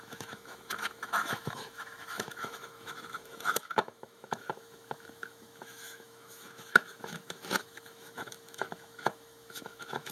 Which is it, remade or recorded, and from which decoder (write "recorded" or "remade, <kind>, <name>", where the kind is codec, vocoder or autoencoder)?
remade, autoencoder, DAC-VAE